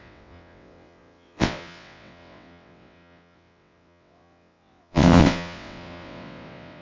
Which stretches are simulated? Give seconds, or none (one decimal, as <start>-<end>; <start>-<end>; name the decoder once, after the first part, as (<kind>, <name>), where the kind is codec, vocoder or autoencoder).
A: 0.0-6.8 (vocoder, WaveNeXt)